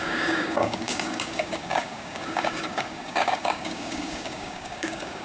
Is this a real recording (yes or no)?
no